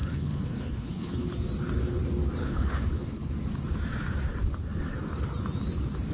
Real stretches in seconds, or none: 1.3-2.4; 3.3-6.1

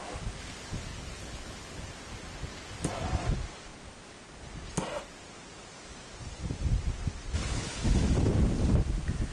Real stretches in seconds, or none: 0.0-0.9; 1.9-7.4; 8.0-9.3

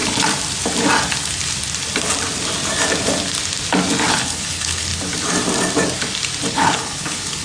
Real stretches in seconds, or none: 0.0-4.1; 4.9-6.5

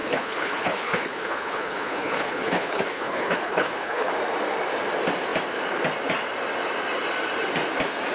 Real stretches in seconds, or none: 4.1-8.1

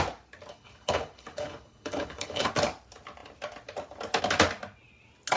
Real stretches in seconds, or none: 0.0-0.5; 2.5-5.4

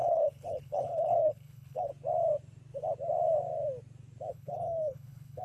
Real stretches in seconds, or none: 1.9-4.3